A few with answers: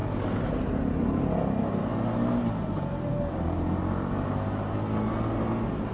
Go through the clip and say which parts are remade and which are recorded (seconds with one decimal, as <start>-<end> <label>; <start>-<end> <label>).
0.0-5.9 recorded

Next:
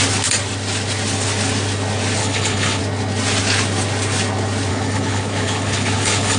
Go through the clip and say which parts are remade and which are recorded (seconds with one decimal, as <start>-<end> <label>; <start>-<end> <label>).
0.0-2.2 recorded; 2.2-2.8 remade; 2.8-4.7 recorded; 4.7-6.4 remade

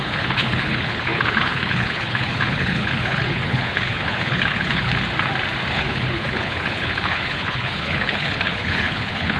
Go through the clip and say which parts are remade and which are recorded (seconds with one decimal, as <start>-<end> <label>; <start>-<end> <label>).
0.0-4.9 remade; 4.9-5.7 recorded; 5.7-9.4 remade

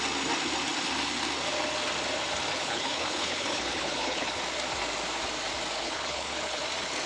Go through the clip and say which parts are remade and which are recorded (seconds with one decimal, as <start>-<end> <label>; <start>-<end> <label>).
0.0-2.5 recorded; 2.5-4.4 remade; 4.4-5.8 recorded; 5.8-6.6 remade; 6.6-7.1 recorded

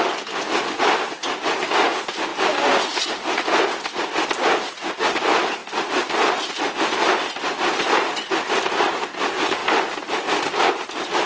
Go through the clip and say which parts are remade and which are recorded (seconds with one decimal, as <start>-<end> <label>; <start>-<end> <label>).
0.0-11.3 recorded

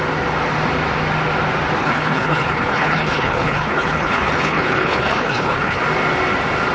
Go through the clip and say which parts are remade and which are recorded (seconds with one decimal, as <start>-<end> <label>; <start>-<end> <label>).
0.0-1.8 recorded; 1.8-5.8 remade; 5.8-6.7 recorded

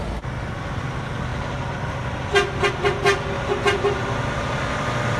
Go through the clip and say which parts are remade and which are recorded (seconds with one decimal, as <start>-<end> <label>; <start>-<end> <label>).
0.0-5.2 recorded